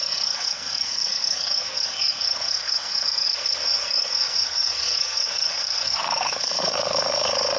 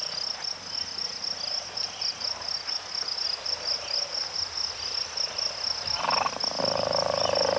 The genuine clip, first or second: second